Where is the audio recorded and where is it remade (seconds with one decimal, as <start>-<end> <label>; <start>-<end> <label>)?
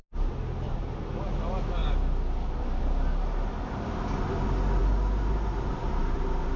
0.0-6.6 recorded